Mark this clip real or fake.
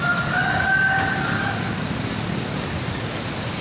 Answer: real